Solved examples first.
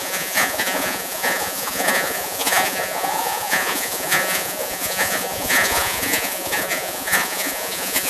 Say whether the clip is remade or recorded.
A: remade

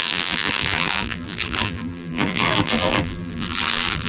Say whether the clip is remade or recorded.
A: remade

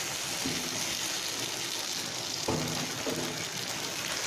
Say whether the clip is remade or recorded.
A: recorded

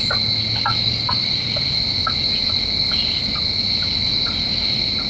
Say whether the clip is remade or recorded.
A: recorded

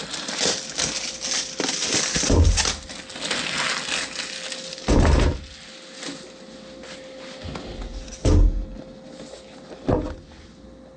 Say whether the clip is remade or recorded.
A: recorded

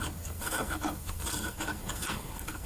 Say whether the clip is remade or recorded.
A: remade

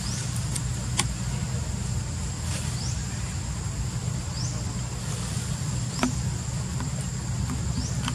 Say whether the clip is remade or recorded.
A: remade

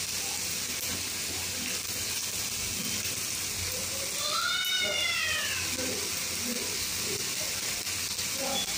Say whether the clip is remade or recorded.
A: recorded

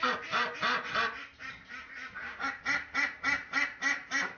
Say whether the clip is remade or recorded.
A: recorded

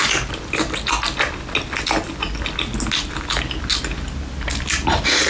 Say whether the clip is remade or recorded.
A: recorded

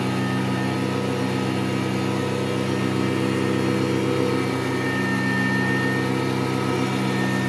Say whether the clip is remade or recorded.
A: recorded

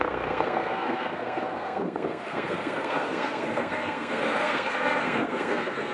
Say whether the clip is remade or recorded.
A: remade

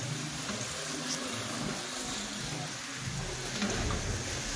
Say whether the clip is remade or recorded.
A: recorded